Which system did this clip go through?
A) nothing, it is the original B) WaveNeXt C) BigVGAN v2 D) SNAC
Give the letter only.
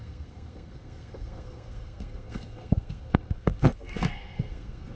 D